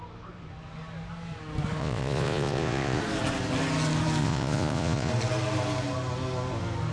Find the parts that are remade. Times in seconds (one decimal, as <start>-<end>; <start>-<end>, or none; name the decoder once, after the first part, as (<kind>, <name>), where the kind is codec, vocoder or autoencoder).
1.8-3.0 (vocoder, Vocos); 4.2-5.1